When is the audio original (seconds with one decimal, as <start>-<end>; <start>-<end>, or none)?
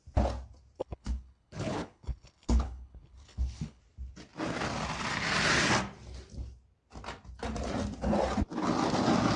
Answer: 0.0-0.8; 3.8-9.4